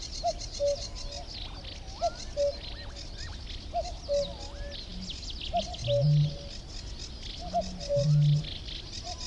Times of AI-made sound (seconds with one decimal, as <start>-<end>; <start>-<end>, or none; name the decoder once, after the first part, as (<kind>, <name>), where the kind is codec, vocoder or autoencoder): none